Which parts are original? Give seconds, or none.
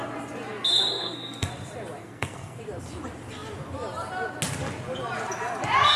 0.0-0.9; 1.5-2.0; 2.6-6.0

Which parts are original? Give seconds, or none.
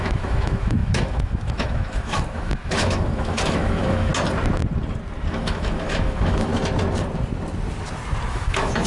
4.1-5.3; 6.5-8.3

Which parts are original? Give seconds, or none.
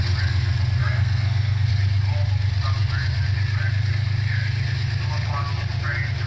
0.0-0.8; 1.7-6.3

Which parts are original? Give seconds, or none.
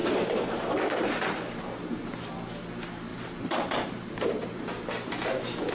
2.3-3.1